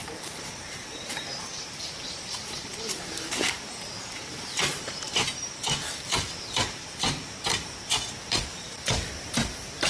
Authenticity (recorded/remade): remade